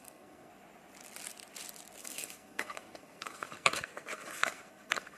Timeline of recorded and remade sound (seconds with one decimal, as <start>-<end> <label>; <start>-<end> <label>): 0.0-0.5 remade; 0.5-2.0 recorded; 2.0-5.2 remade